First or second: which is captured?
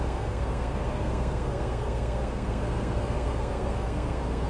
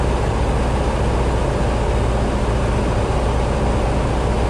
second